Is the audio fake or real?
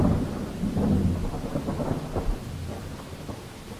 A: real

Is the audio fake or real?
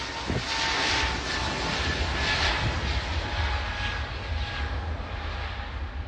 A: real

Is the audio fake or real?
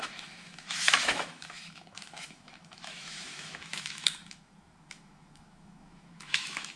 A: fake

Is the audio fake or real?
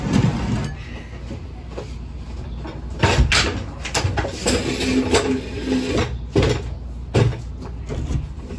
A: real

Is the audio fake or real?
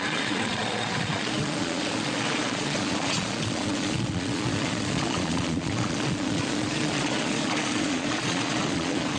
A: fake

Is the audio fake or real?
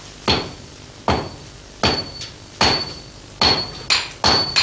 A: real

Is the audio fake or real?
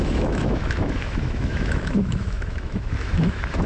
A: fake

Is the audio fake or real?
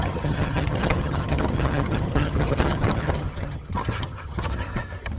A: fake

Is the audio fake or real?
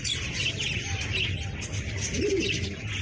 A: real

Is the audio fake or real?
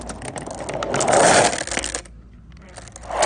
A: real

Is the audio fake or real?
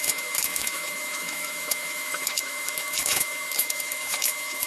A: fake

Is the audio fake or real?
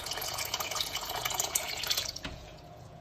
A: fake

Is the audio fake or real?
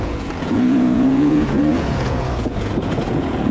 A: fake